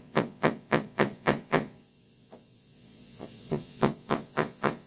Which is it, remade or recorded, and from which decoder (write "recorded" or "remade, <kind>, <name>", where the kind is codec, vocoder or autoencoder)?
remade, vocoder, Vocos